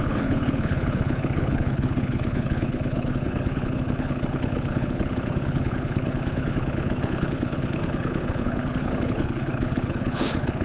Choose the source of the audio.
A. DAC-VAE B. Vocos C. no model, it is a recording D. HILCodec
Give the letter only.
D